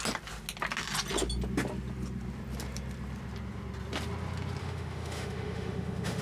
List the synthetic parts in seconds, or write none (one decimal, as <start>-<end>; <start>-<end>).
4.6-6.2